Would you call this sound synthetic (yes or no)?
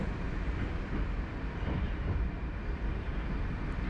yes